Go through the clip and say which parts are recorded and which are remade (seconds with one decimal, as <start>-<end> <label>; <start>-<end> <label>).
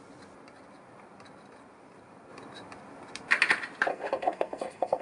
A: 0.0-3.9 recorded; 3.9-5.0 remade